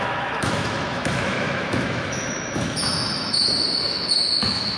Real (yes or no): no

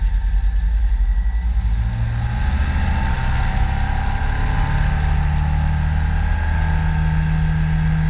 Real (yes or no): yes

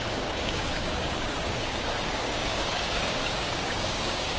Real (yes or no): no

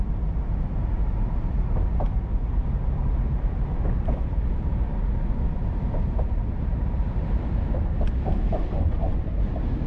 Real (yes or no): no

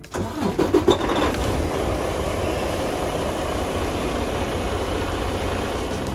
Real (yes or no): yes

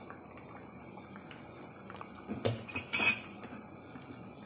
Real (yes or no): no